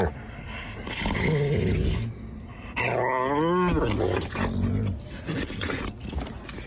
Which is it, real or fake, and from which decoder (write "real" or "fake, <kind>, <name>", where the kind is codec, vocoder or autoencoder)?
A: real